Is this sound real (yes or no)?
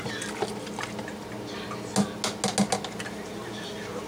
yes